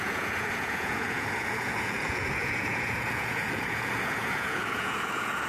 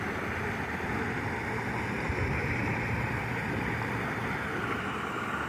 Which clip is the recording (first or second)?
second